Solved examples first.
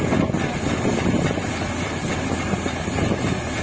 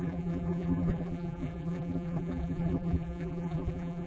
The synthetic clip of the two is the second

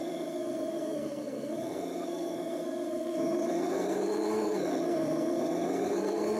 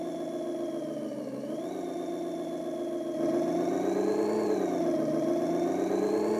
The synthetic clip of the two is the first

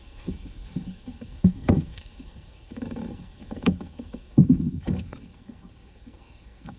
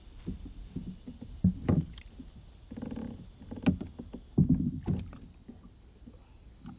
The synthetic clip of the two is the first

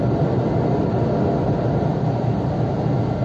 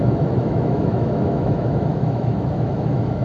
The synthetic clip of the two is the second